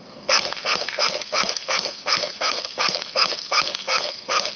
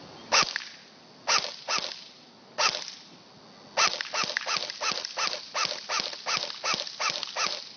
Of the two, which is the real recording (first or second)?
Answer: second